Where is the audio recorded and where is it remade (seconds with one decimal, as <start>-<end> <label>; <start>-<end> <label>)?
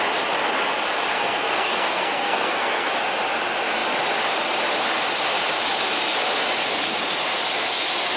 0.0-1.1 recorded; 1.1-2.9 remade; 2.9-8.2 recorded